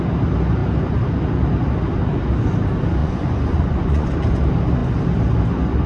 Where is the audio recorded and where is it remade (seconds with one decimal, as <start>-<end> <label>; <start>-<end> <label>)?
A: 0.0-3.0 recorded; 3.0-4.1 remade; 4.1-5.9 recorded